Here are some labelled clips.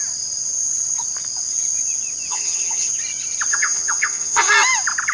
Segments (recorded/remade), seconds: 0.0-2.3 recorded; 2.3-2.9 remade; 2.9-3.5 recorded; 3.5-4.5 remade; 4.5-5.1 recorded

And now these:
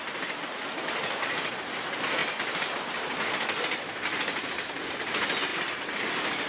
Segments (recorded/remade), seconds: 0.0-6.5 recorded

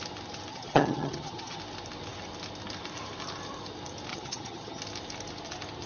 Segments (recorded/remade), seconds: 0.0-0.5 recorded; 0.5-1.6 remade; 1.6-4.1 recorded; 4.1-4.8 remade; 4.8-5.9 recorded

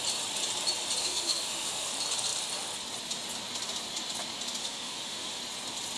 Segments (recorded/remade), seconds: 0.0-1.0 recorded; 1.0-1.9 remade; 1.9-4.6 recorded; 4.6-5.4 remade; 5.4-6.0 recorded

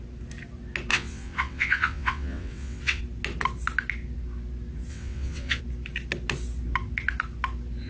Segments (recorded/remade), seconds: 0.0-0.9 recorded; 0.9-3.0 remade; 3.0-4.9 recorded; 4.9-5.6 remade; 5.6-7.9 recorded

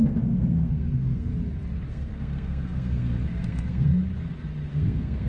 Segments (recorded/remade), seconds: 0.0-1.3 remade; 1.3-1.9 recorded; 1.9-4.0 remade; 4.0-4.7 recorded; 4.7-5.3 remade